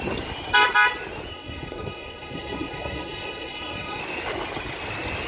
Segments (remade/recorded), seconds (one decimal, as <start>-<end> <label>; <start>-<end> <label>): 0.0-1.3 recorded; 1.3-4.0 remade; 4.0-5.3 recorded